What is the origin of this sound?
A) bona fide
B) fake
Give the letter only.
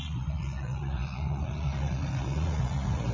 B